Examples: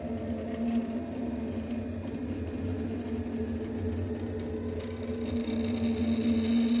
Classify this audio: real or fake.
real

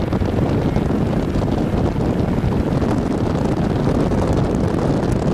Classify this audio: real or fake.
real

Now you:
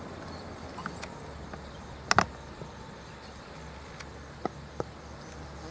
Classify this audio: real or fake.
real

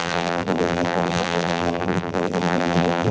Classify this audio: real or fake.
fake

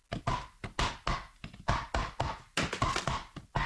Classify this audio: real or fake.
real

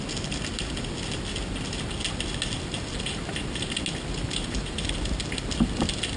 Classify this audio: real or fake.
real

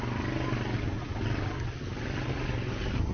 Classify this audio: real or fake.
real